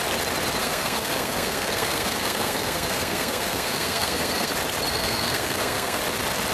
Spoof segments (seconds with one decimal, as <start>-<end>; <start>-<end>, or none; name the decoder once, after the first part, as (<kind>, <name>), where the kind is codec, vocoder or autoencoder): 0.6-4.5 (codec, SNAC); 4.9-6.0